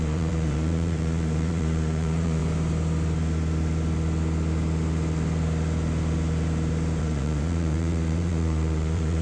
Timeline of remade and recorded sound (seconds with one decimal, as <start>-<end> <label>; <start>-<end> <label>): 0.0-2.4 remade; 2.4-7.0 recorded; 7.0-9.2 remade